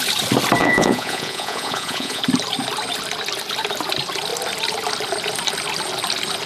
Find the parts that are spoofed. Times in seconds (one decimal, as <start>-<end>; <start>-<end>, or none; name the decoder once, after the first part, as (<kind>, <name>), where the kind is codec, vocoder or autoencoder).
0.6-2.2 (vocoder, Vocos)